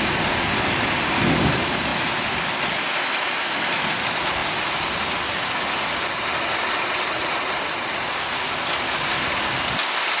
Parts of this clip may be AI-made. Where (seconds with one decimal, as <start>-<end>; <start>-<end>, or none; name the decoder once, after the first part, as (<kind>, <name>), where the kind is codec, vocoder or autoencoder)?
none